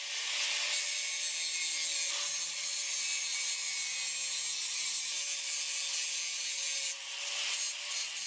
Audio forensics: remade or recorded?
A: recorded